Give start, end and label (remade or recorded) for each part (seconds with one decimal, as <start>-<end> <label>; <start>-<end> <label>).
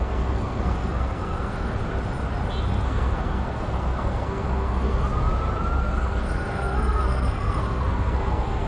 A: 0.0-1.8 remade; 1.8-2.8 recorded; 2.8-5.1 remade; 5.1-5.8 recorded; 5.8-8.7 remade